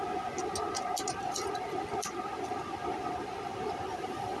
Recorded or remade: recorded